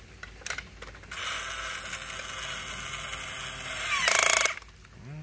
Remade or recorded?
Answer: recorded